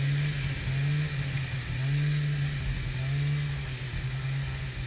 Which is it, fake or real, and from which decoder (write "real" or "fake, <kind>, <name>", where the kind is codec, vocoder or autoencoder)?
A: real